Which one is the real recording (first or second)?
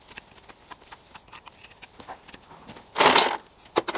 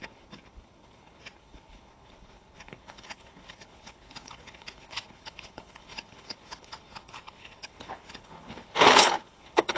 first